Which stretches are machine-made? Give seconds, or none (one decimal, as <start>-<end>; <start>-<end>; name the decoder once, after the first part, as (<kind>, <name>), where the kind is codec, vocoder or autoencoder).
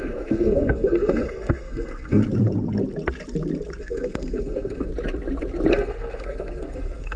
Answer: 0.0-2.2 (codec, SNAC); 3.8-4.9; 5.7-7.2